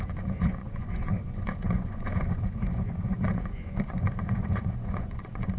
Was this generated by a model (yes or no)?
yes